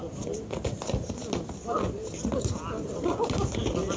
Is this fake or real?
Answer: real